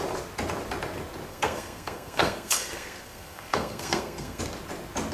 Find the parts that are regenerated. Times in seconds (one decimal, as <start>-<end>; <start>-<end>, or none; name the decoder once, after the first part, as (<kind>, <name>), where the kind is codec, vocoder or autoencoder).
1.3-4.4 (codec, SNAC)